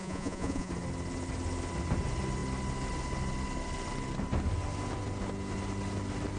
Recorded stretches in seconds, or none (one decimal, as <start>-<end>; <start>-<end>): 0.7-6.4